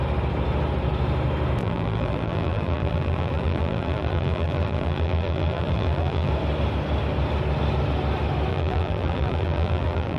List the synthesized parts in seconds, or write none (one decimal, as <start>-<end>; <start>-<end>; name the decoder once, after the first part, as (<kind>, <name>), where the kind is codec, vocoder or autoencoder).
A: 1.6-6.3 (vocoder, BigVGAN v2); 8.5-10.2